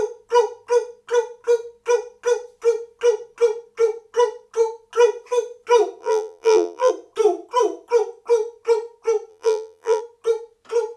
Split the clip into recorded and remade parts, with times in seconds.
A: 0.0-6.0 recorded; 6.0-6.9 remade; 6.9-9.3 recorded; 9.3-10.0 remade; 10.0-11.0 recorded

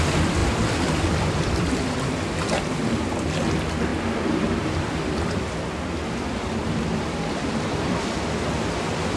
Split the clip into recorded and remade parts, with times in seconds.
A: 0.0-0.4 recorded; 0.4-2.6 remade; 2.6-3.9 recorded; 3.9-8.0 remade; 8.0-9.2 recorded

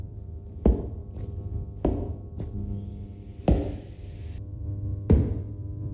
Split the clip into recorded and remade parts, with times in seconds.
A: 0.0-1.0 remade; 1.0-4.5 recorded; 4.5-4.9 remade; 4.9-5.5 recorded; 5.5-5.9 remade

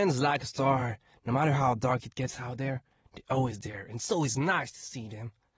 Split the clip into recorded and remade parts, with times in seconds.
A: 0.0-0.8 recorded; 0.8-1.9 remade; 1.9-3.2 recorded; 3.2-4.0 remade; 4.0-5.6 recorded